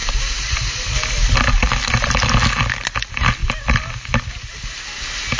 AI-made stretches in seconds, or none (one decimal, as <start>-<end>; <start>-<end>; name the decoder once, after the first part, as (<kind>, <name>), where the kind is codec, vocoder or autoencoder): none